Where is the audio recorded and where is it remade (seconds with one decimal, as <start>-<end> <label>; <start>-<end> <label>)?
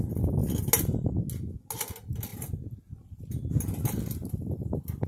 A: 0.0-5.1 recorded